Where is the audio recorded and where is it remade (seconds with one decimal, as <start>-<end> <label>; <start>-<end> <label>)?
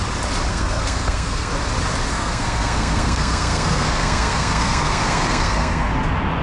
0.0-0.5 recorded; 0.5-1.5 remade; 1.5-2.1 recorded; 2.1-5.9 remade; 5.9-6.4 recorded